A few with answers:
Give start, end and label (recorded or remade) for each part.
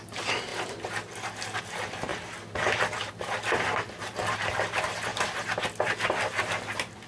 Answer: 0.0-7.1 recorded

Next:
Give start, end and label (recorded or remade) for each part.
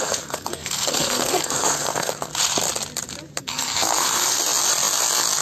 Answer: 0.0-2.3 remade; 2.3-3.4 recorded; 3.4-4.4 remade; 4.4-5.4 recorded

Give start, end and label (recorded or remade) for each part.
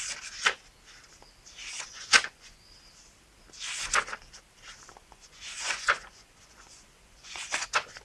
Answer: 0.0-1.9 recorded; 1.9-2.7 remade; 2.7-5.0 recorded; 5.0-8.0 remade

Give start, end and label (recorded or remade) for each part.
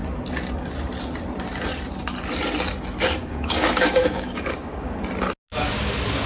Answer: 0.0-3.2 recorded; 3.2-5.0 remade; 5.0-6.3 recorded